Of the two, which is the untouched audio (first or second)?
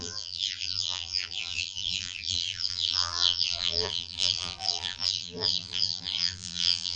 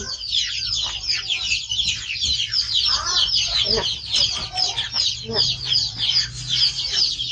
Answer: second